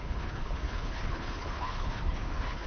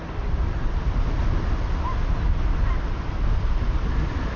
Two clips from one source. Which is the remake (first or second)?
first